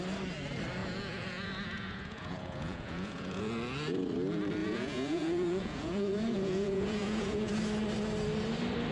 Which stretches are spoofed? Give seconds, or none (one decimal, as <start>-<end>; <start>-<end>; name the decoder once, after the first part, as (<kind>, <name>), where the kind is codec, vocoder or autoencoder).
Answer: 0.8-3.4 (vocoder, Vocos); 4.6-7.5